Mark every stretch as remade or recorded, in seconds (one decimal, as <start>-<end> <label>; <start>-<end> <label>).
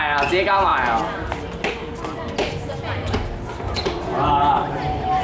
0.0-5.2 recorded